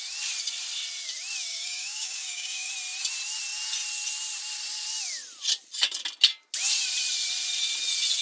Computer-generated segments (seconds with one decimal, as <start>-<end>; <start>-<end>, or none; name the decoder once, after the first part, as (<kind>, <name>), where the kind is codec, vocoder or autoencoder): 1.5-2.7 (codec, DAC)